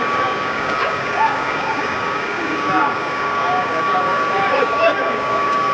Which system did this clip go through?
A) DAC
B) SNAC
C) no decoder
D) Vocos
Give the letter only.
A